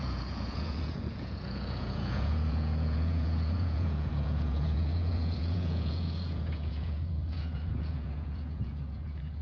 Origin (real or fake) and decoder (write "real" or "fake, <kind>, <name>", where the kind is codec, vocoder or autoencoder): fake, vocoder, Vocos